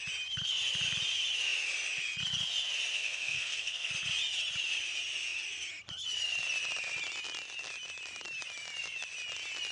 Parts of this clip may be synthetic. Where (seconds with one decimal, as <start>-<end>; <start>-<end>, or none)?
2.9-3.9